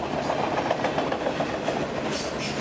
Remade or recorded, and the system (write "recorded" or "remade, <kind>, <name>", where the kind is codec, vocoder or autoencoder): recorded